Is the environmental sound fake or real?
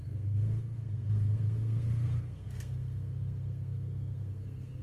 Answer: fake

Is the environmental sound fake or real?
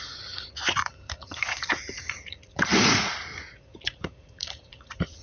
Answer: fake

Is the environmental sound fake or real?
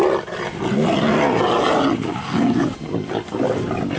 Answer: real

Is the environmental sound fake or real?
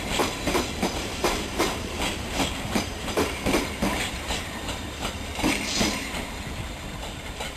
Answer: fake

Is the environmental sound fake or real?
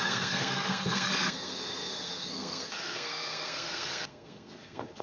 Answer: fake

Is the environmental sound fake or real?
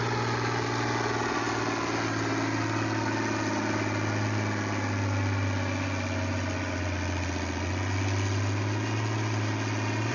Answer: real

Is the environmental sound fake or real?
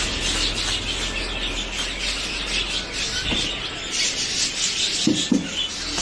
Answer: real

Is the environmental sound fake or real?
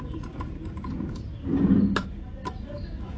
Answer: real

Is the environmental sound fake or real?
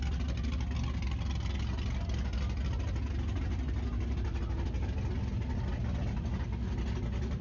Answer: real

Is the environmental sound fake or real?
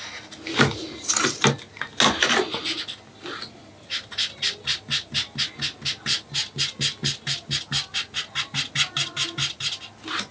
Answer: real